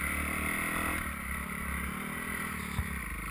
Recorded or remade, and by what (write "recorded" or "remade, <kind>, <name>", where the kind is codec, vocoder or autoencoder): recorded